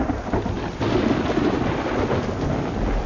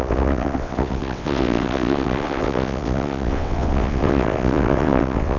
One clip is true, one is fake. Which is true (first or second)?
first